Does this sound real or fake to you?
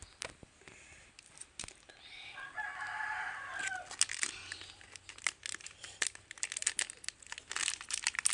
real